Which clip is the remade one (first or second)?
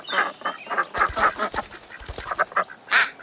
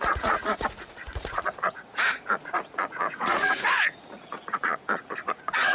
second